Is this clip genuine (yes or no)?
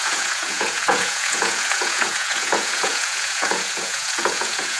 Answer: no